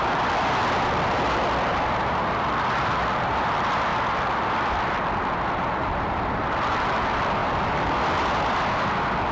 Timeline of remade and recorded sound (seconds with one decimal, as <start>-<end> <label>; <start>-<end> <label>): 0.0-7.4 recorded; 7.4-8.0 remade; 8.0-9.3 recorded